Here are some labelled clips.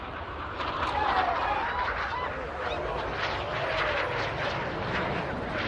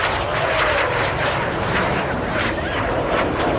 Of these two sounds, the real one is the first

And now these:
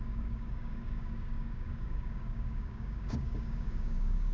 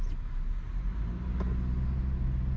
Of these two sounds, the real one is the second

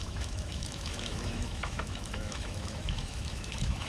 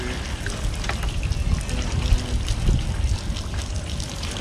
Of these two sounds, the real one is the second